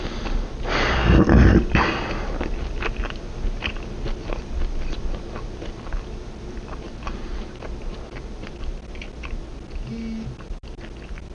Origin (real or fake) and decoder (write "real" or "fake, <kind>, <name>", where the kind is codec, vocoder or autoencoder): real